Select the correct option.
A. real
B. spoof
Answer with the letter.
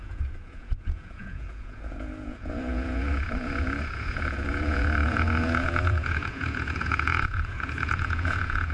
B